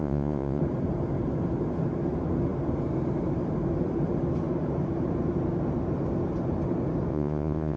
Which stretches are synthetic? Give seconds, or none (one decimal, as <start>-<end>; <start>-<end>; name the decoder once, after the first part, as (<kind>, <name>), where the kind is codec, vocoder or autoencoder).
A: 0.0-0.6 (vocoder, Vocos); 7.1-7.8